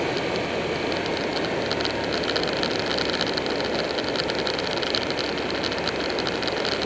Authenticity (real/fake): real